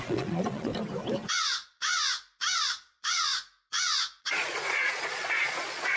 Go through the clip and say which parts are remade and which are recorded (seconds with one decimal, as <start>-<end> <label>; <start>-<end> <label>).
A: 0.0-0.7 remade; 0.7-1.3 recorded; 1.3-1.9 remade; 1.9-2.7 recorded; 2.7-3.3 remade; 3.3-4.2 recorded; 4.2-6.0 remade